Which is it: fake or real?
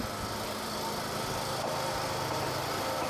real